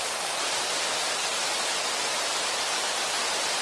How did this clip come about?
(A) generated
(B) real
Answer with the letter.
B